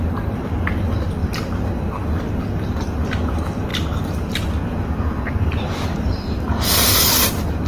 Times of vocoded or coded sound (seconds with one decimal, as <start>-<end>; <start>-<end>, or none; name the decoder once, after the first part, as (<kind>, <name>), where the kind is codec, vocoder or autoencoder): none

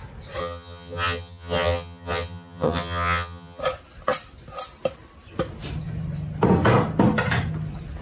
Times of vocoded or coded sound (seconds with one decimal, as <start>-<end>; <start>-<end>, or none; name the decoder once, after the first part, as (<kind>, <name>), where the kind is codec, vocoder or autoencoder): 0.4-3.6 (vocoder, HiFi-GAN)

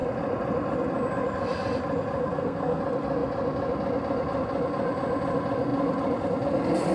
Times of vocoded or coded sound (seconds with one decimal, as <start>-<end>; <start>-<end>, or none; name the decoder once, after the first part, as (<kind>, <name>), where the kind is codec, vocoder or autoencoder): 2.2-2.8 (codec, SNAC)

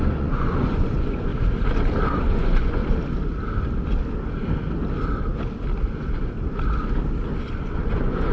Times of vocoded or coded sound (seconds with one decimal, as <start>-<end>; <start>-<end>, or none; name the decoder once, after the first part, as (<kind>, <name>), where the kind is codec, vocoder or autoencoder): 0.0-1.3 (vocoder, Vocos); 2.2-2.8; 7.5-8.3